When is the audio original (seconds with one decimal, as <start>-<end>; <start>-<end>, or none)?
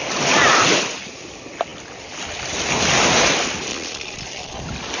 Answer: 0.0-3.7; 4.6-5.0